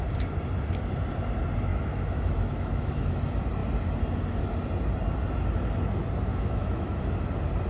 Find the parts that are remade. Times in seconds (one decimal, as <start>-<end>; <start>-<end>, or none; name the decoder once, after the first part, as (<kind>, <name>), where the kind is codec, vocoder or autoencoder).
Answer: 1.7-3.2 (autoencoder, DAC-VAE); 6.3-7.1